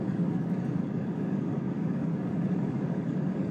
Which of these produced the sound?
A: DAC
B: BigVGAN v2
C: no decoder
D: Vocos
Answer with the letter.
A